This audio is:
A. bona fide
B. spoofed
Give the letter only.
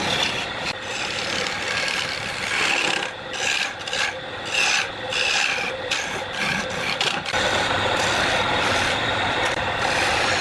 A